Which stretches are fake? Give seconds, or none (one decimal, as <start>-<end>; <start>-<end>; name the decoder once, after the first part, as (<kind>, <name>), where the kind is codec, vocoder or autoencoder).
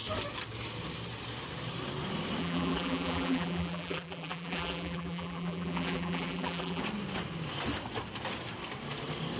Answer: 2.4-6.8 (vocoder, BigVGAN v2)